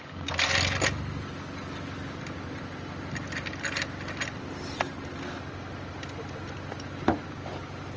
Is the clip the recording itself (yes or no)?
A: yes